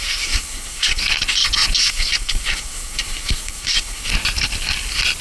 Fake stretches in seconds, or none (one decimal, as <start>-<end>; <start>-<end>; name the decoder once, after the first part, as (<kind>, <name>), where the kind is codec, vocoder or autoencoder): 0.0-1.0 (codec, SNAC); 1.9-4.1

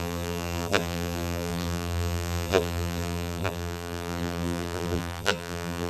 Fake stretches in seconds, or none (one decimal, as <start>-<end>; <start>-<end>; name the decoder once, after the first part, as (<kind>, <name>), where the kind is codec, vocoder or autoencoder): 0.0-5.9 (vocoder, BigVGAN v2)

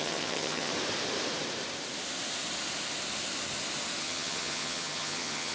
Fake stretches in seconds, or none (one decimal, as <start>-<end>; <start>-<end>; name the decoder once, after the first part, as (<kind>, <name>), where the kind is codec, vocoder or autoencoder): 0.0-0.7 (vocoder, HiFi-GAN); 4.0-5.5

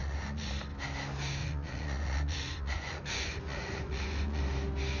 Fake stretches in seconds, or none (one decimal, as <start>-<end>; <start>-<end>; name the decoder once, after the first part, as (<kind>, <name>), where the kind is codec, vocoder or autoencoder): 0.0-0.5 (vocoder, Vocos); 1.4-4.4

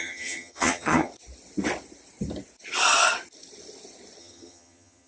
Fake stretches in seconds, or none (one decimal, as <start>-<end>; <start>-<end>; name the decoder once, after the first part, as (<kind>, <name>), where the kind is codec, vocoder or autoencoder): 0.0-1.1 (vocoder, HiFi-GAN); 4.2-5.1

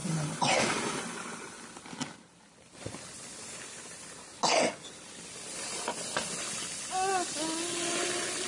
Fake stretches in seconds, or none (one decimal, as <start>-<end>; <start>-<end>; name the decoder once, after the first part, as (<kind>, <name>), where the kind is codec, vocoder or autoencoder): none

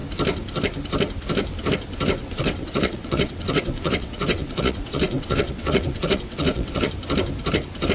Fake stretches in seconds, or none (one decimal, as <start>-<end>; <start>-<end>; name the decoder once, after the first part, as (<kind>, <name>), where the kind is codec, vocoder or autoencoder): 2.2-6.9 (vocoder, WaveNeXt)

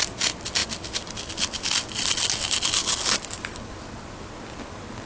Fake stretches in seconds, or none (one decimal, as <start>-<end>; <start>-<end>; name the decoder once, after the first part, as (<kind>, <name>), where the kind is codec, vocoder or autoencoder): none